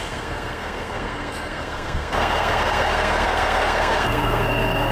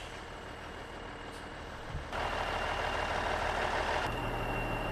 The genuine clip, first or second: second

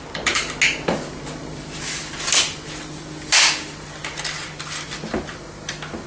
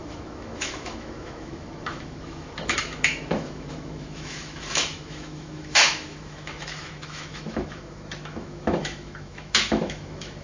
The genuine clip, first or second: first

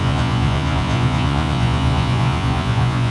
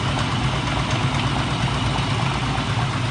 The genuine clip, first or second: second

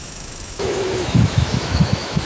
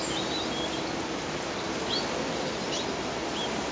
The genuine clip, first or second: second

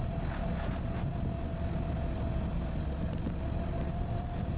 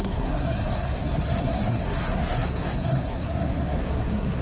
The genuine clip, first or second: first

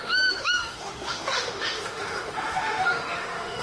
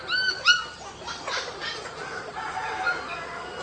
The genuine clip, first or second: second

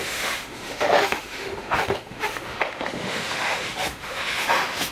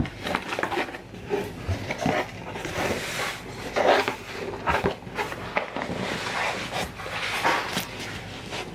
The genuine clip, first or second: second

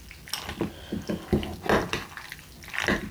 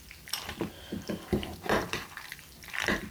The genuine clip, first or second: first